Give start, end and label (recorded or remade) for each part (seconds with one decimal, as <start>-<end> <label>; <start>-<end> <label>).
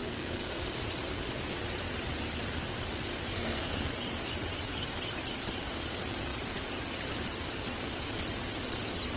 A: 0.0-0.5 remade; 0.5-3.3 recorded; 3.3-3.9 remade; 3.9-9.2 recorded